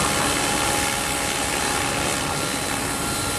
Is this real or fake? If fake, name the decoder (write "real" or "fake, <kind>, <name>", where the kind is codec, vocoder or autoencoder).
real